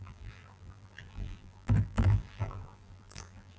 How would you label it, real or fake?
fake